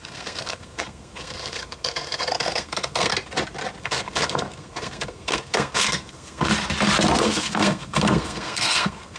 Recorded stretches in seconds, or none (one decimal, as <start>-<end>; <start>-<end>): 3.1-3.8; 6.5-7.2